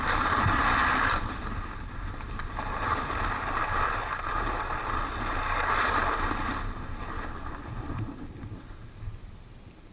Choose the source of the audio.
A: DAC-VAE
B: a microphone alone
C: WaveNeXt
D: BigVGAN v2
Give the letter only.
B